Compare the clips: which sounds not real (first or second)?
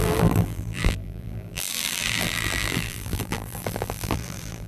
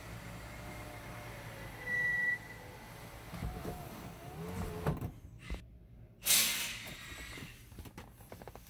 first